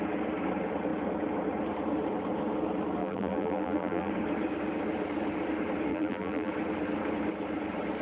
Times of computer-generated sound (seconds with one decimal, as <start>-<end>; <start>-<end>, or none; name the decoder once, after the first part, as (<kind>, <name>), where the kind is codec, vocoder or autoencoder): 3.0-4.1 (vocoder, BigVGAN v2); 5.9-6.5